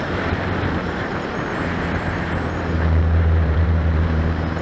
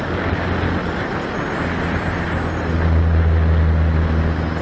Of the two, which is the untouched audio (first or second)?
second